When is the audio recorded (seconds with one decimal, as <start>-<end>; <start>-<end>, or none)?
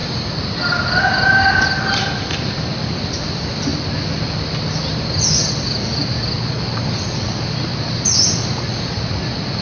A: 0.0-9.6